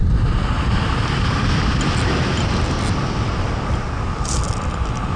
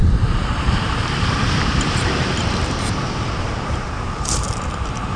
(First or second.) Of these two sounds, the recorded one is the first